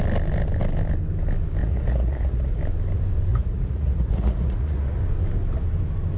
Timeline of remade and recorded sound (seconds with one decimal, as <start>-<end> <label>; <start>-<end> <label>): 0.0-1.6 recorded; 1.6-2.6 remade; 2.6-3.3 recorded; 3.3-5.0 remade; 5.0-6.2 recorded